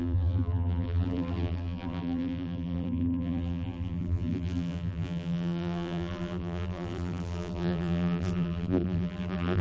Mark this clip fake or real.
fake